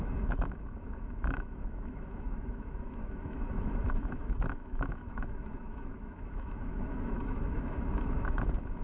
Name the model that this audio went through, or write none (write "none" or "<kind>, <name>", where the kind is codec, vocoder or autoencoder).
autoencoder, DAC-VAE